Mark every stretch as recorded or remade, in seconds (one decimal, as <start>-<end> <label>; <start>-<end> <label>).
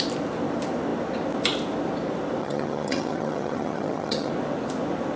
0.0-2.4 recorded; 2.4-4.3 remade; 4.3-5.2 recorded